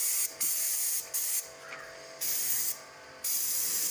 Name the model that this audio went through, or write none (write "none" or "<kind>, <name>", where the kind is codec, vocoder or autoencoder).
none